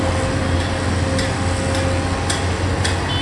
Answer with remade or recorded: recorded